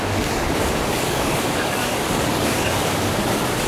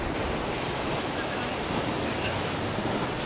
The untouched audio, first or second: second